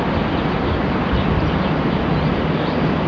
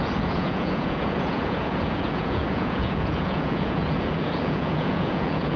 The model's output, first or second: second